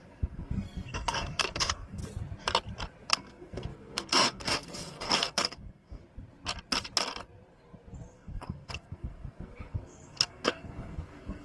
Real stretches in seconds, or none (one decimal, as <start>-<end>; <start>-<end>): 2.0-3.1; 6.0-8.1